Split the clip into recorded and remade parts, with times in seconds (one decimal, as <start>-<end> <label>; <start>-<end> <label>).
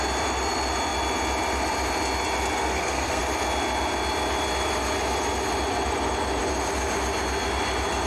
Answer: 0.0-2.6 recorded; 2.6-3.2 remade; 3.2-8.1 recorded